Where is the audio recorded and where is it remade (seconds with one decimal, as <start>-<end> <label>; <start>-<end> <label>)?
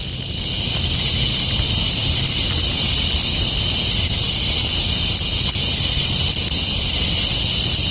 0.0-7.9 recorded